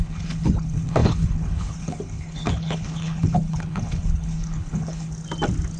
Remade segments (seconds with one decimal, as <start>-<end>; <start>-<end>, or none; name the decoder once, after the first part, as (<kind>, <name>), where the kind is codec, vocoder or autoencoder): 0.0-5.1 (codec, HILCodec)